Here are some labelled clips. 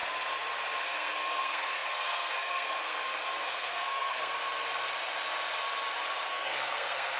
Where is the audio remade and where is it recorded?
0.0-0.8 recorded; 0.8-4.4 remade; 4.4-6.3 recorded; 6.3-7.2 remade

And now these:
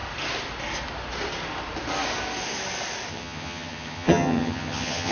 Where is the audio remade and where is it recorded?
0.0-3.1 recorded; 3.1-5.1 remade

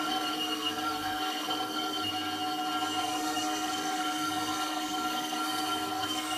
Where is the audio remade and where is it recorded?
0.0-2.1 remade; 2.1-3.0 recorded; 3.0-6.4 remade

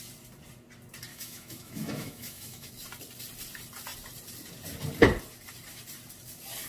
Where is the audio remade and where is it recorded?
0.0-1.1 recorded; 1.1-2.7 remade; 2.7-6.7 recorded

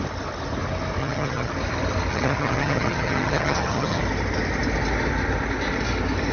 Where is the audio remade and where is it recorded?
0.0-1.0 recorded; 1.0-1.5 remade; 1.5-2.1 recorded; 2.1-4.0 remade; 4.0-6.3 recorded